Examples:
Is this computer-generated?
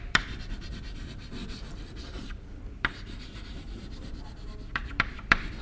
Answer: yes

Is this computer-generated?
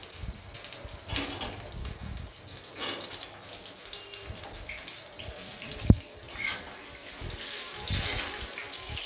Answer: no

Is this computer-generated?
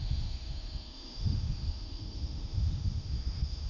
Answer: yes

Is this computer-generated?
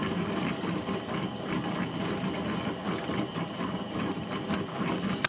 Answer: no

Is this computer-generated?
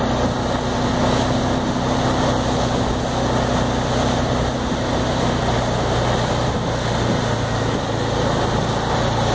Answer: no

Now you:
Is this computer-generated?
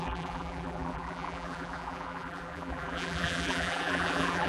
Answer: yes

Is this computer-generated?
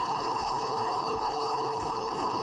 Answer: yes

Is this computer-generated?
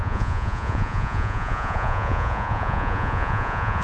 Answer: yes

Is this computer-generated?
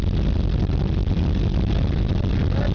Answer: no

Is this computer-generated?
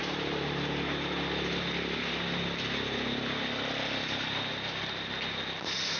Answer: no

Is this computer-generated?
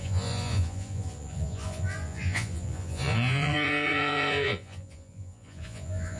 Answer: yes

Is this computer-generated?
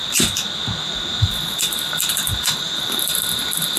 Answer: no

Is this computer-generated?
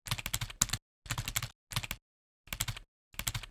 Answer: no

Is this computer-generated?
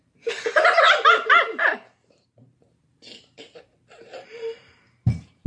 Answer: yes